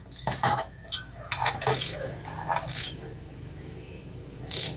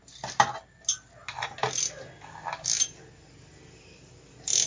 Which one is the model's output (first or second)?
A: first